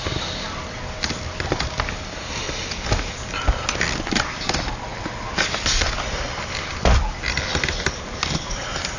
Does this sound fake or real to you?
real